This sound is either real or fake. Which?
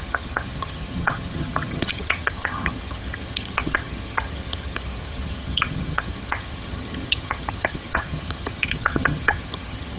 fake